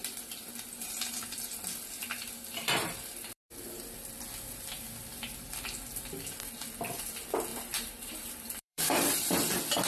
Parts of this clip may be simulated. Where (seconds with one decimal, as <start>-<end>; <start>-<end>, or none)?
2.0-5.4; 7.5-9.3